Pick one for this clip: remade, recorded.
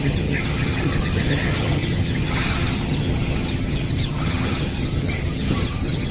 remade